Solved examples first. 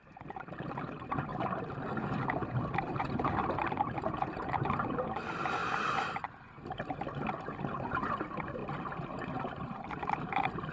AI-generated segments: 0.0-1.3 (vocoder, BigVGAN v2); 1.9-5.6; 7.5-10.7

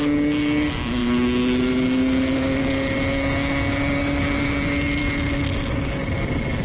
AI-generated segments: none

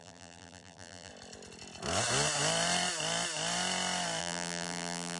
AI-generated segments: 0.0-1.1 (vocoder, BigVGAN v2); 4.2-5.2

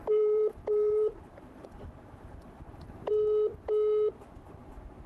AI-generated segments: 0.0-3.1 (vocoder, BigVGAN v2)

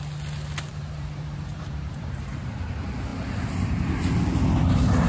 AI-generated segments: 0.7-2.7 (vocoder, BigVGAN v2)

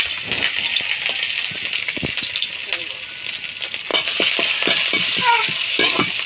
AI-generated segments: 3.9-5.8 (vocoder, BigVGAN v2)

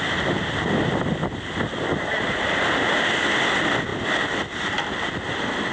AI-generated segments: none

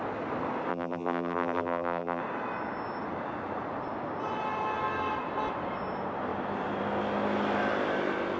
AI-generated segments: 0.7-2.2 (vocoder, BigVGAN v2)